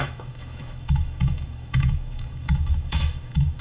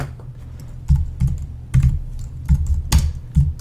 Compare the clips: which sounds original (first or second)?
second